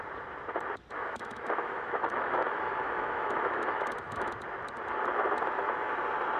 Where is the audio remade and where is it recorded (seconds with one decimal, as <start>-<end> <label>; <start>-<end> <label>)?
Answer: 0.0-1.0 recorded; 1.0-4.3 remade; 4.3-6.4 recorded